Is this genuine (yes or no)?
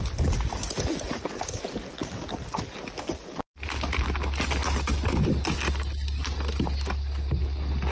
yes